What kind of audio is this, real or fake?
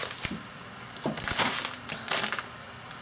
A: real